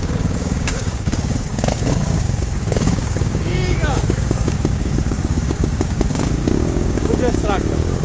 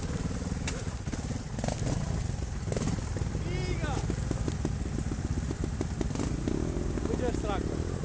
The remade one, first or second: first